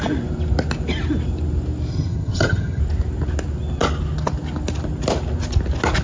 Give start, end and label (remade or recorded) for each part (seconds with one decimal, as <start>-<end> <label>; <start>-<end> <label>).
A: 0.0-1.9 recorded; 1.9-2.8 remade; 2.8-6.0 recorded